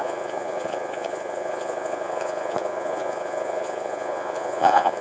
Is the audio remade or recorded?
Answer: remade